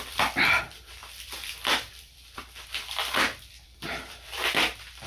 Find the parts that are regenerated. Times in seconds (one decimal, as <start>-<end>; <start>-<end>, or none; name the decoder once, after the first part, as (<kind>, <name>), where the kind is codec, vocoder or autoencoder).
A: 0.0-5.1 (vocoder, BigVGAN v2)